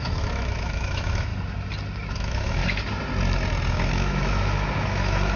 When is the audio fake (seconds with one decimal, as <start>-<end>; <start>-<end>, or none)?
0.0-1.3; 2.1-2.6; 3.7-5.4